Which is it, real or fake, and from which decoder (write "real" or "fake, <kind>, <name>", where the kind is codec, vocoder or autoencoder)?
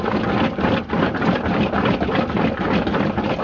real